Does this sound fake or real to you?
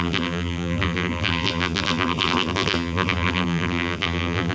fake